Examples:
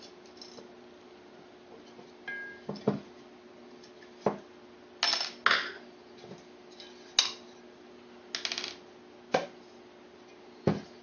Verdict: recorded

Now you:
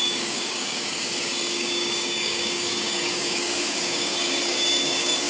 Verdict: remade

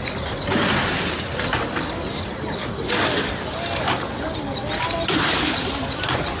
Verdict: recorded